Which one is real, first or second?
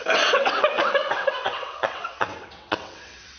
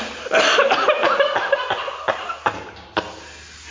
second